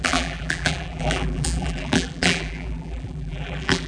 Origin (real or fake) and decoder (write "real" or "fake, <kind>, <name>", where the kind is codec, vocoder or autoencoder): fake, vocoder, BigVGAN v2